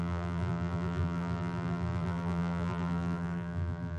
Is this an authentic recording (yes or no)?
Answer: no